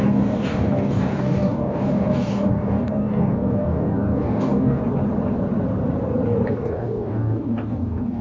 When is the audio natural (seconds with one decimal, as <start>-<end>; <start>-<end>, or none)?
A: 4.8-6.5